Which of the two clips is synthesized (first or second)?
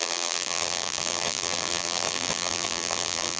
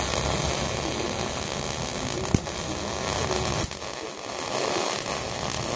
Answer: first